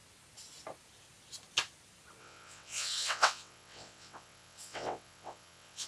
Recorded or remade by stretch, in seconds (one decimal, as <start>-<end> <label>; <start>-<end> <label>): 0.0-2.2 recorded; 2.2-5.9 remade